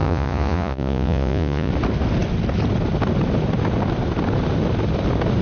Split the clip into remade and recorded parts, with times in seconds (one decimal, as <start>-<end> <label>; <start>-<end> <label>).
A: 0.0-1.7 remade; 1.7-5.4 recorded